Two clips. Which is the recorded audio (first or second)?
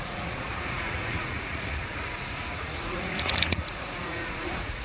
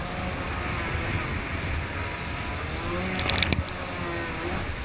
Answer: second